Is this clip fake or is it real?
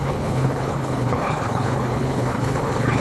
fake